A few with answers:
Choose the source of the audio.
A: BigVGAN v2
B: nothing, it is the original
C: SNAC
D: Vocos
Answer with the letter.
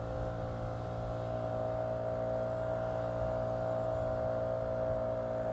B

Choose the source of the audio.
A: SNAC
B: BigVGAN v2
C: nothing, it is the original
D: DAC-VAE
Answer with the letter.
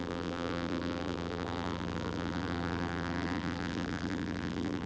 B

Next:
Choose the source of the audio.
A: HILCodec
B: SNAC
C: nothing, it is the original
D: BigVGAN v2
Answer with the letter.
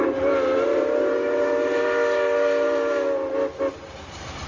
C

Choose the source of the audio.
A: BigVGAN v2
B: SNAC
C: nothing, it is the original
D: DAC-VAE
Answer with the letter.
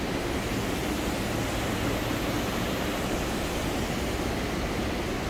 C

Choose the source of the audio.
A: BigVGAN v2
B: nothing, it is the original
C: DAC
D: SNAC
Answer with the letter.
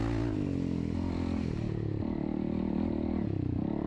B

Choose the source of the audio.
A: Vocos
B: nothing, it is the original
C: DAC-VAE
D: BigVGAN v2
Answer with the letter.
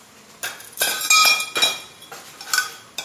B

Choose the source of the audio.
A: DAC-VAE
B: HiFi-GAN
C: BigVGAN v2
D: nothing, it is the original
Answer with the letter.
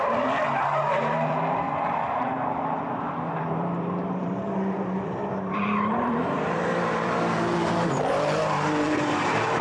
C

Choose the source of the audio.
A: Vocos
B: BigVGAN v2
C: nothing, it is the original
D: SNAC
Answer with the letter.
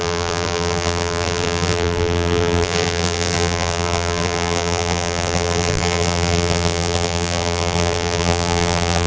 B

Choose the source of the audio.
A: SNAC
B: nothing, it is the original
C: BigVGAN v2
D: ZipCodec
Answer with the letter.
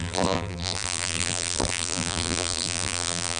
C